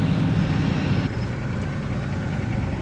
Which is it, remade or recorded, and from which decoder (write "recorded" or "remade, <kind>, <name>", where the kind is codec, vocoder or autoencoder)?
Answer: recorded